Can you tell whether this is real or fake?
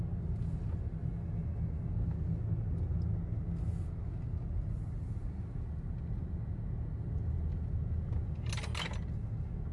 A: real